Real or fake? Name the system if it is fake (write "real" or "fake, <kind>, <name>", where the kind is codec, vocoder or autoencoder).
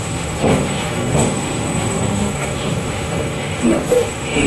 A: fake, autoencoder, DAC-VAE